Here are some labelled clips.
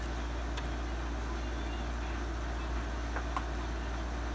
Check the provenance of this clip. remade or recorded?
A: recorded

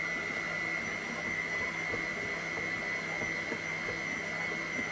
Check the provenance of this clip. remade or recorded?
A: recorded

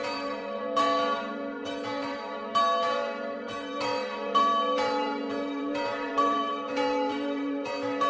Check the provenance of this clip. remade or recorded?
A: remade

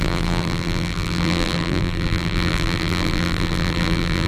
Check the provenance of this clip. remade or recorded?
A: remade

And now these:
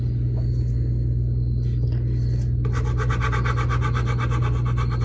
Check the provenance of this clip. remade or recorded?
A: recorded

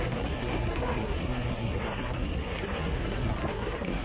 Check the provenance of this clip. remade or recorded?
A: remade